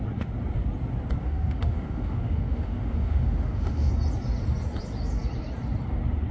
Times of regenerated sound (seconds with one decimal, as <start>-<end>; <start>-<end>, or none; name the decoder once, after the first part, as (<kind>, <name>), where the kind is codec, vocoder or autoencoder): 1.2-3.9 (autoencoder, DAC-VAE)